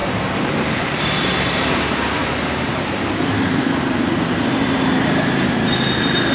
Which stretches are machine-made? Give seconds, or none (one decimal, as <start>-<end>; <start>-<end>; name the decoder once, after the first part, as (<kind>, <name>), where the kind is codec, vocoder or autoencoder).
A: 0.0-6.3 (vocoder, BigVGAN v2)

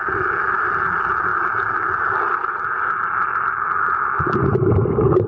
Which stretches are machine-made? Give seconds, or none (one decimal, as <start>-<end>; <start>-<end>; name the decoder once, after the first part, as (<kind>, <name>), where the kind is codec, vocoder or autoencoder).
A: 1.3-2.6 (vocoder, BigVGAN v2)

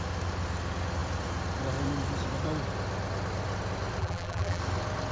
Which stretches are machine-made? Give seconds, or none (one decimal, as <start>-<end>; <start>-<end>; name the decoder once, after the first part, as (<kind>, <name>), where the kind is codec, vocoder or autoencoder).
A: 4.0-4.6 (vocoder, BigVGAN v2)

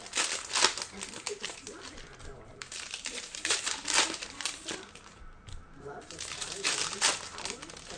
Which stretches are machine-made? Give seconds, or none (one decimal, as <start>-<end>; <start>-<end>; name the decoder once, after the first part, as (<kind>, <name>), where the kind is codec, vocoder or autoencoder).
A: 1.4-2.0 (vocoder, BigVGAN v2); 2.5-7.1